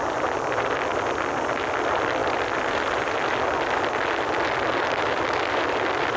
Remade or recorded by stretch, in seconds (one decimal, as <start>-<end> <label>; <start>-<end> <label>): 0.0-6.2 recorded